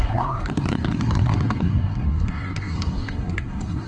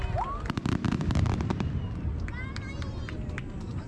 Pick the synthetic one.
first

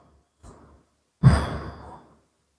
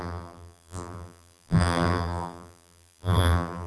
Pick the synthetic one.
second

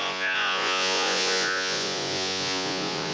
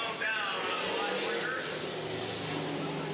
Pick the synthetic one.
first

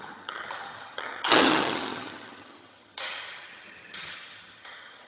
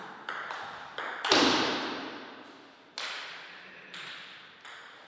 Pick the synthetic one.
first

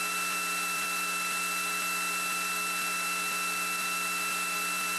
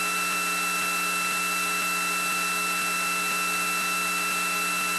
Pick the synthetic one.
first